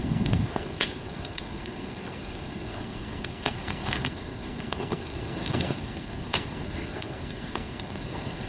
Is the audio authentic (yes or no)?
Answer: no